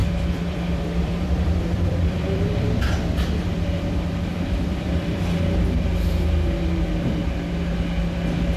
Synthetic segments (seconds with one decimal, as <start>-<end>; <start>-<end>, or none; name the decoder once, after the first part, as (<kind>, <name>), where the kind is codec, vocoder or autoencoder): 0.0-5.2 (vocoder, BigVGAN v2)